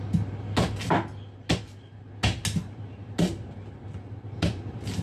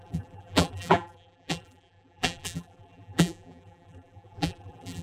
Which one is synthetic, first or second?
second